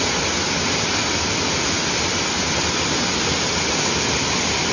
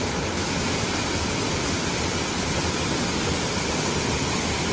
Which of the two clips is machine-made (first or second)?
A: second